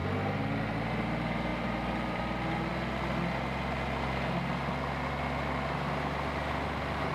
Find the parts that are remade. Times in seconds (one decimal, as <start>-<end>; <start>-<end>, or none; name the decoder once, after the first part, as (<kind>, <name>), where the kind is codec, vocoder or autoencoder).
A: 1.5-2.2 (vocoder, BigVGAN v2)